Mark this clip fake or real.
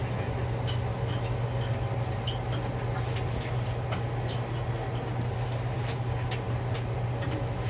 real